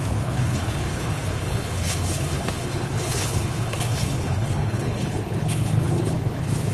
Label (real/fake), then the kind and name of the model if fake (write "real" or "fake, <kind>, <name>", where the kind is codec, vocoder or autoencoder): fake, codec, HILCodec